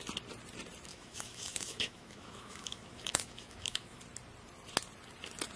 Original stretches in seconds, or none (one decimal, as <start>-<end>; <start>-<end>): 0.0-0.9; 4.0-5.6